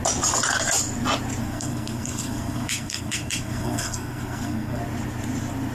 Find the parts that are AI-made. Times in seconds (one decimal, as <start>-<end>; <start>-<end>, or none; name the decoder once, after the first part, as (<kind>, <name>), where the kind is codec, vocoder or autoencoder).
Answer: 1.4-4.8 (codec, SNAC)